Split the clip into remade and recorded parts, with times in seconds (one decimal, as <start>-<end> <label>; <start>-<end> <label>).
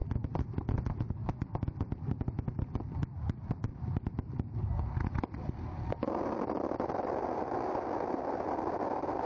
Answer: 0.0-1.0 remade; 1.0-9.3 recorded